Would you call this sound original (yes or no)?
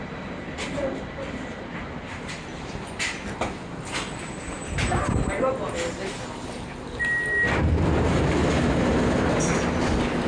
yes